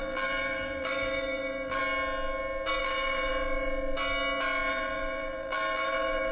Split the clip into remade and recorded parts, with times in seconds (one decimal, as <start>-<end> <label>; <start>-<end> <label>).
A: 0.0-1.8 remade; 1.8-2.8 recorded; 2.8-3.3 remade; 3.3-4.7 recorded; 4.7-6.3 remade